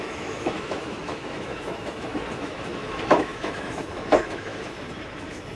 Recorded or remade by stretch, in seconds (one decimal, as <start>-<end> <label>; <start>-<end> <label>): 0.0-5.6 remade